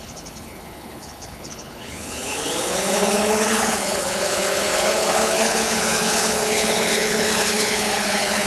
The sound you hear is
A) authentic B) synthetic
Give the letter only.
B